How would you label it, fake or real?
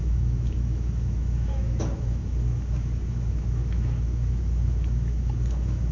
fake